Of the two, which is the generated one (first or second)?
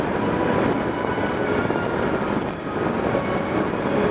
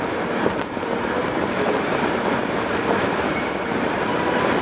second